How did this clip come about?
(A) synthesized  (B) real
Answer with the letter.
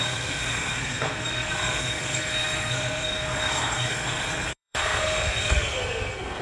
A